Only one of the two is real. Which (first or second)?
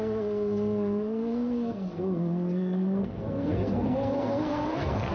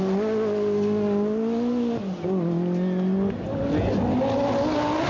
second